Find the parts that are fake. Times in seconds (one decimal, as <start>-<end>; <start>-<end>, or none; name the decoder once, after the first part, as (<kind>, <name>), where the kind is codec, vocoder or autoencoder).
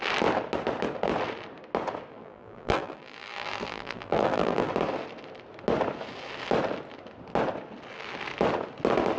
2.1-4.7 (vocoder, BigVGAN v2)